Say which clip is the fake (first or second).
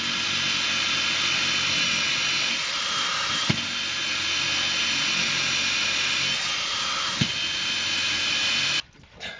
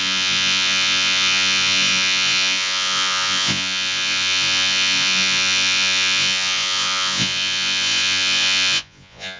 second